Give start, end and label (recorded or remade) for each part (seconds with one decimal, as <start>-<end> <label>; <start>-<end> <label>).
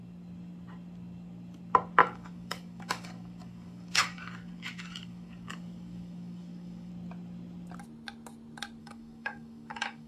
0.0-2.0 recorded; 2.0-6.9 remade; 6.9-8.8 recorded; 8.8-10.1 remade